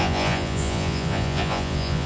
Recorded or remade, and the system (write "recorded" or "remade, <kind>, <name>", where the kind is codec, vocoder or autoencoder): remade, vocoder, Vocos